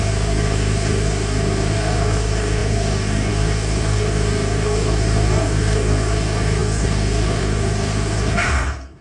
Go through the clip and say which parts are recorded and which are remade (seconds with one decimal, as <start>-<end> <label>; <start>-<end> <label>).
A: 0.0-9.0 remade